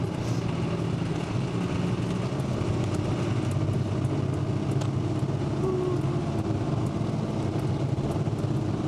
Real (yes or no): yes